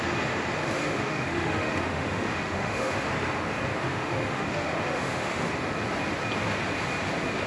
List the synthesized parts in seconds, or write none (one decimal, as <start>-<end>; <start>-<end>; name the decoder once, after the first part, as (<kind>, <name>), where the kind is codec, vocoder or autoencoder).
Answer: 0.6-3.1 (autoencoder, DAC-VAE); 3.7-5.5